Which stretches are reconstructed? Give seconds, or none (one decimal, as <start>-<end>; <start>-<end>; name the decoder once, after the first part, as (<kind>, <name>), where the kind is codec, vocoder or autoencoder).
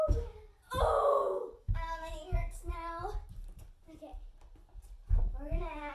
1.1-2.7 (codec, DAC); 5.2-5.9